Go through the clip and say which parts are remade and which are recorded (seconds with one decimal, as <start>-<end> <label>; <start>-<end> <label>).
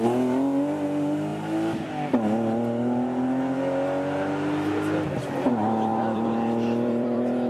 0.0-5.9 recorded; 5.9-7.5 remade